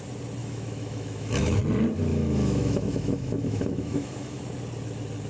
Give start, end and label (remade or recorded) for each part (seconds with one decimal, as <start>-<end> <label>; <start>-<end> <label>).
0.0-0.4 recorded; 0.4-1.6 remade; 1.6-2.1 recorded; 2.1-4.4 remade; 4.4-5.3 recorded